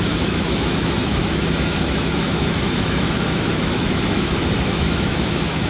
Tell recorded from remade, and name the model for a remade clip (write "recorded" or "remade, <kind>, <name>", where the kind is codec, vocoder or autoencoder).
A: remade, autoencoder, DAC-VAE